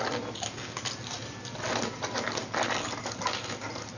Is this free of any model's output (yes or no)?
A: yes